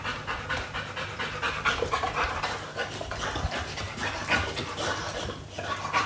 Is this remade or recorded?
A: recorded